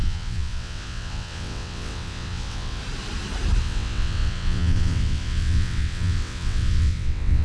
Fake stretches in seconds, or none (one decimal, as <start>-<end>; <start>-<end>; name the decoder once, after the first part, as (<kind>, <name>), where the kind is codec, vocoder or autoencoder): 0.0-2.8 (vocoder, WaveNeXt); 3.6-7.4